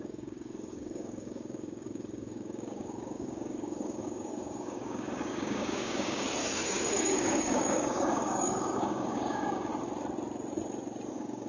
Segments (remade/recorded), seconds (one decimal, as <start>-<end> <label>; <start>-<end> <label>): 0.0-9.7 remade; 9.7-11.1 recorded; 11.1-11.5 remade